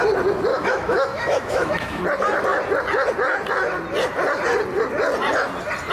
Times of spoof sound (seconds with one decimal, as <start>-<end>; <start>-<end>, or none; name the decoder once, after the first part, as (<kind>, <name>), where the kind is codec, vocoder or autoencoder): 0.5-2.0 (autoencoder, DAC-VAE)